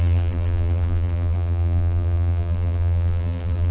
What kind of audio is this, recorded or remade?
remade